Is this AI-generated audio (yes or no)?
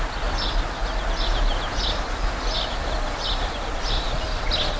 no